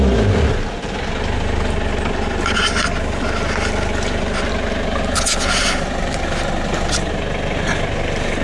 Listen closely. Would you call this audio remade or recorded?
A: recorded